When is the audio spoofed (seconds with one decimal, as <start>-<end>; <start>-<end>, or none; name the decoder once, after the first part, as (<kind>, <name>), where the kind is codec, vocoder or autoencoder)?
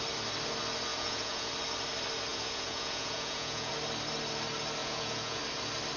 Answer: 0.9-1.5 (vocoder, Vocos); 2.3-3.7; 4.8-5.4